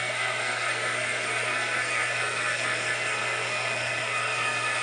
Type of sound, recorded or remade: remade